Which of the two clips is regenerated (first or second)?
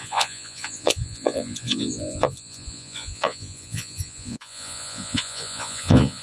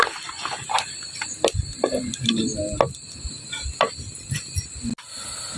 first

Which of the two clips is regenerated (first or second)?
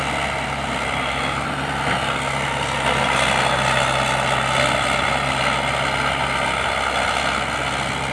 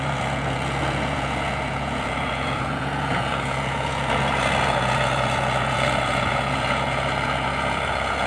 second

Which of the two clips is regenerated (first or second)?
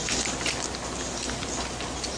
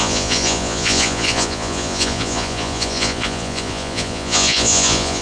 second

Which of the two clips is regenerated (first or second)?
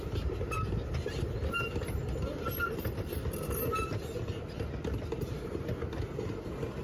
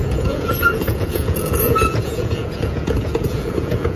second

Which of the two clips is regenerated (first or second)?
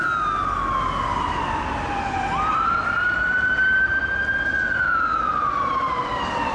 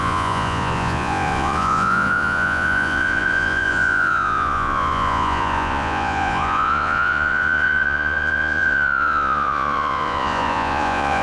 second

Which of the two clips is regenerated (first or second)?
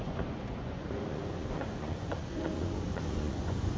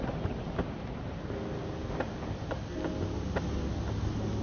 first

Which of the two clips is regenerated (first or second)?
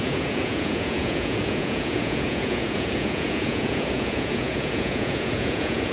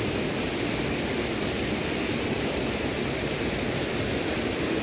first